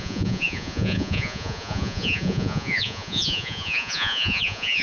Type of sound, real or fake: fake